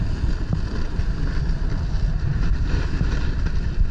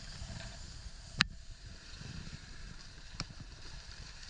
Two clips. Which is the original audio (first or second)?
first